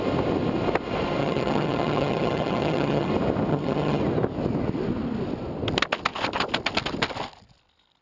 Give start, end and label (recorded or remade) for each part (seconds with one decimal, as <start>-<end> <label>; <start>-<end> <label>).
0.0-1.2 recorded; 1.2-3.1 remade; 3.1-3.5 recorded; 3.5-4.0 remade; 4.0-8.0 recorded